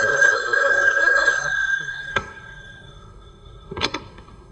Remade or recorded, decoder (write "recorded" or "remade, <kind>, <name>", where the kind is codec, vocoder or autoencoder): remade, codec, SNAC